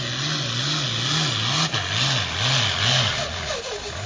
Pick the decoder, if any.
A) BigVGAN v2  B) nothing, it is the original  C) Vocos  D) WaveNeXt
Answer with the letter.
B